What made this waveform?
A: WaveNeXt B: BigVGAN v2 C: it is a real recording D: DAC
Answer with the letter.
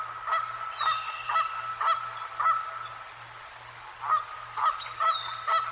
C